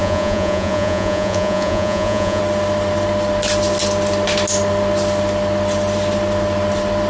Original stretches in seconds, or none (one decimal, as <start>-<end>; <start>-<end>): 2.4-7.1